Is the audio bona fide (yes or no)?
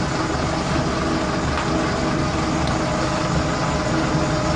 yes